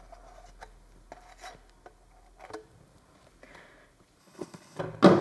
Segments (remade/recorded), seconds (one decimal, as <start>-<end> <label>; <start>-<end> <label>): 0.0-4.2 recorded; 4.2-4.8 remade; 4.8-5.2 recorded